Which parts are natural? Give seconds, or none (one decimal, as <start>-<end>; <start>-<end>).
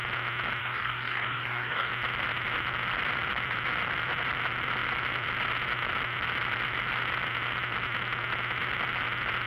0.0-0.6; 1.9-9.5